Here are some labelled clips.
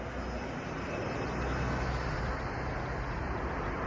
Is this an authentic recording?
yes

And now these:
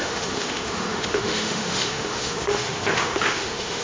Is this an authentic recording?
no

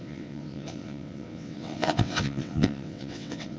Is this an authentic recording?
no